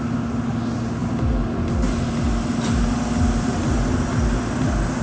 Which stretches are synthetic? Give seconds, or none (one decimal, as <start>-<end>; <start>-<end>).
none